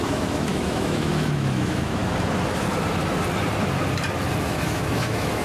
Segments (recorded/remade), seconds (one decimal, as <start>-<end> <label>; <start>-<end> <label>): 0.0-2.0 remade; 2.0-4.4 recorded; 4.4-5.4 remade

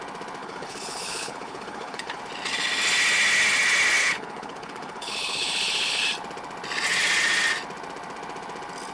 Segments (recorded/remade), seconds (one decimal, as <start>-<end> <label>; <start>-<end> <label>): 0.0-0.4 recorded; 0.4-2.2 remade; 2.2-4.0 recorded; 4.0-6.0 remade; 6.0-8.9 recorded

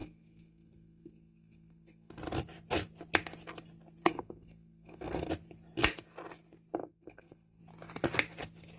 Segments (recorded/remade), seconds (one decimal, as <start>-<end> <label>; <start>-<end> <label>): 0.0-2.1 remade; 2.1-4.0 recorded; 4.0-5.3 remade; 5.3-6.8 recorded; 6.8-7.6 remade; 7.6-8.8 recorded

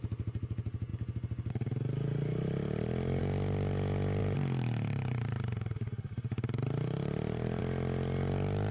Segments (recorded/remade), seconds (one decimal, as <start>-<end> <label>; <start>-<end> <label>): 0.0-4.2 recorded; 4.2-7.6 remade; 7.6-8.7 recorded

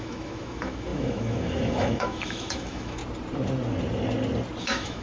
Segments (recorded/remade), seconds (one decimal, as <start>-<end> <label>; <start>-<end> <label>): 0.0-3.0 remade; 3.0-4.6 recorded; 4.6-5.0 remade